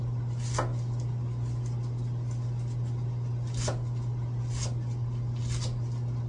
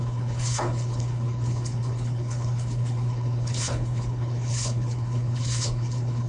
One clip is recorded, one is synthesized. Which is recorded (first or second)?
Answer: first